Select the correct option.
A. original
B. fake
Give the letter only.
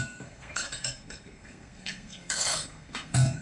B